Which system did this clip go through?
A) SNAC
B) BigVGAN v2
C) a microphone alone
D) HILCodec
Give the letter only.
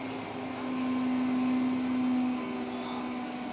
C